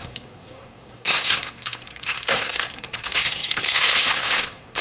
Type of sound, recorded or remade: remade